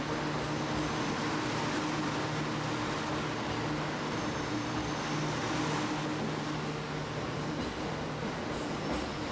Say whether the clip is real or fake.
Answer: real